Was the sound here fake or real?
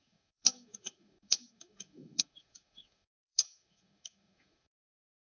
fake